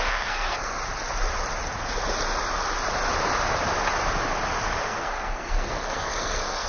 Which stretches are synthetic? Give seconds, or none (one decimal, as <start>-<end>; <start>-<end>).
0.0-0.8; 4.8-6.7